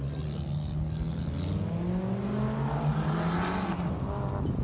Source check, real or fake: real